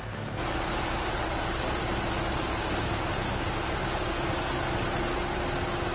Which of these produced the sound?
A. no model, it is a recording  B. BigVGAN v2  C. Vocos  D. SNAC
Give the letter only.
A